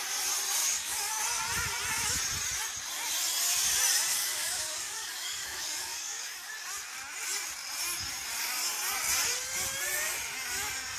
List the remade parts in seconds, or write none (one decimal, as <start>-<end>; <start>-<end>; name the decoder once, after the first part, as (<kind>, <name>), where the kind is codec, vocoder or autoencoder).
0.6-1.2 (codec, DAC); 4.1-6.5